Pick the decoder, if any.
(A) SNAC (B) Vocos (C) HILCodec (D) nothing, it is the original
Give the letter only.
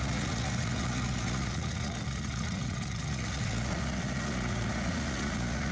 B